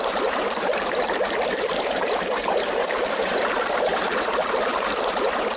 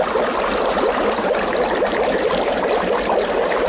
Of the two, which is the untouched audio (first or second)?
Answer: second